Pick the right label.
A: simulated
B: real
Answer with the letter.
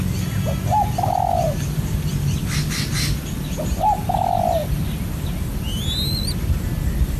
B